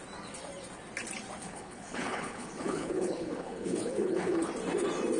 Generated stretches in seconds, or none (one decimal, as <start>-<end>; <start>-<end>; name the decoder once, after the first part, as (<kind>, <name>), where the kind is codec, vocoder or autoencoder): 1.4-4.5 (codec, HILCodec)